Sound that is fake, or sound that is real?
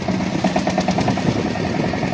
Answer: real